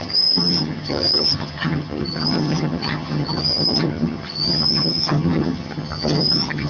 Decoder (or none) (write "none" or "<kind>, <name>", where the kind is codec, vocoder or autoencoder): vocoder, HiFi-GAN